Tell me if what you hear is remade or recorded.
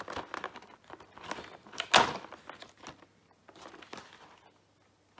recorded